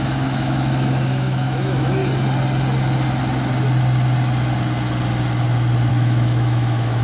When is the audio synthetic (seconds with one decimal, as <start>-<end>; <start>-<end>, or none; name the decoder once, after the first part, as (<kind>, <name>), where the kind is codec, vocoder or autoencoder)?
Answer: 0.0-2.0 (autoencoder, DAC-VAE); 5.9-7.0